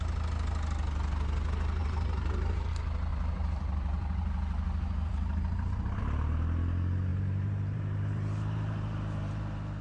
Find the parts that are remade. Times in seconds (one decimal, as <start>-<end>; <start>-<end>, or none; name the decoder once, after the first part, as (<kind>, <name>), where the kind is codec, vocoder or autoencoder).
1.8-2.7 (vocoder, BigVGAN v2); 3.1-6.0; 7.1-9.8